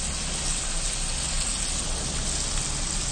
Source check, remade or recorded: recorded